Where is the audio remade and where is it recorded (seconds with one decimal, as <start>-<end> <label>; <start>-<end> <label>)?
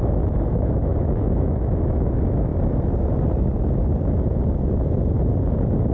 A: 0.0-2.5 remade; 2.5-5.9 recorded